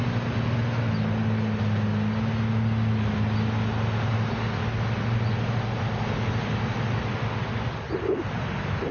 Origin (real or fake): real